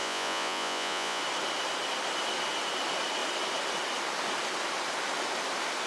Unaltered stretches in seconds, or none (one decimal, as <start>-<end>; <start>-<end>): 1.2-5.9